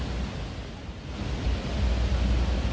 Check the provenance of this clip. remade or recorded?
recorded